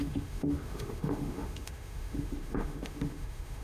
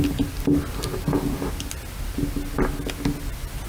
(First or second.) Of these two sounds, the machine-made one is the first